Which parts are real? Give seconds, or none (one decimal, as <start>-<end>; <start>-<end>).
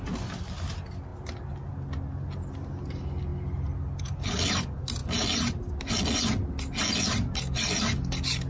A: 0.0-8.5